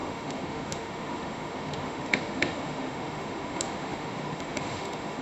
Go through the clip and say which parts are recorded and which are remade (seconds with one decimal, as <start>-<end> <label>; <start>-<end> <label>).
0.0-5.2 remade